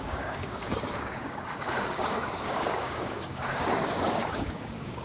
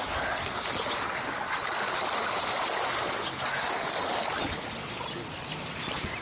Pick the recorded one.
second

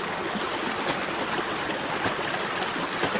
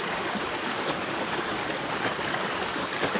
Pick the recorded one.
first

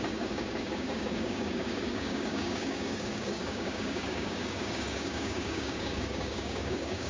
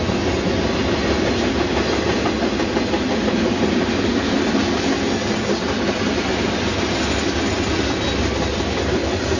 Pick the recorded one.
second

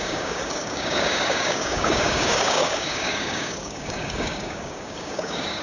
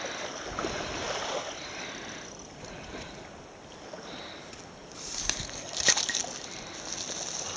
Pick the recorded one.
second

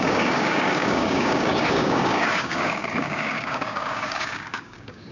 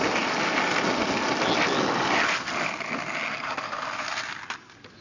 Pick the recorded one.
second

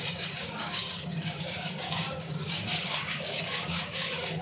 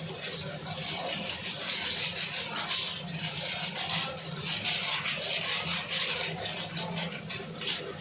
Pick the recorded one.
second